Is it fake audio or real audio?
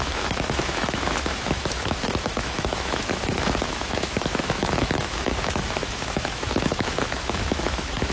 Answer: fake